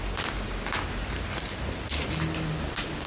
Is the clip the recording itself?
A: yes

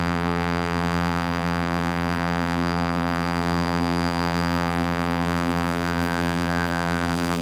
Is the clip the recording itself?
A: no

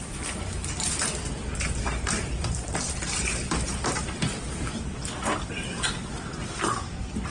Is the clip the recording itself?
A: no